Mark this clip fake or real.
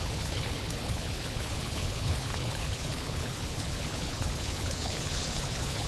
fake